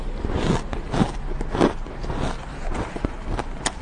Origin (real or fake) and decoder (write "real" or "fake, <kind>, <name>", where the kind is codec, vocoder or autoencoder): real